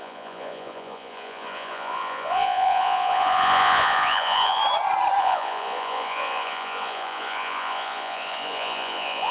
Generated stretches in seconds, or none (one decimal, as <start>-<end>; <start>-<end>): 0.0-4.6; 5.2-9.3